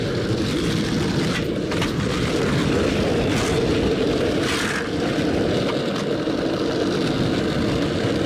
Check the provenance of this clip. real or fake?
real